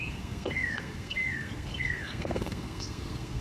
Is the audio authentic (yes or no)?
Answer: no